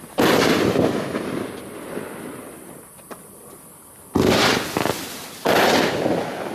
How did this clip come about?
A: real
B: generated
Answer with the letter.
A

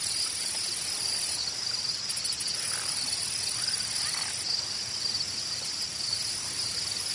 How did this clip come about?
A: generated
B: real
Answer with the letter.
B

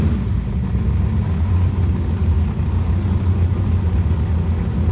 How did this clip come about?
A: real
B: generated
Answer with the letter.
A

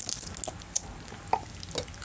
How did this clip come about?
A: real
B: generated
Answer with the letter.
A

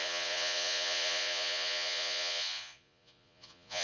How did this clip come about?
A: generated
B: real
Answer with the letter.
A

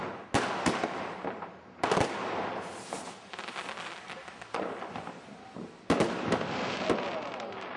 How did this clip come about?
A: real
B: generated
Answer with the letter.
A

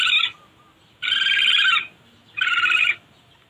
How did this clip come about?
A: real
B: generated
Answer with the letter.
A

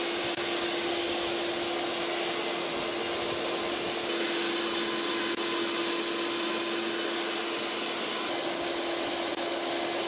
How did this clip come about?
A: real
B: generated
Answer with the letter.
A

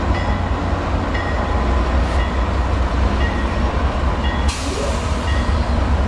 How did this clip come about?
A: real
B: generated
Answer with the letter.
A